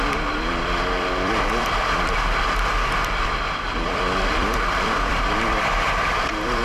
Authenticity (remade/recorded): remade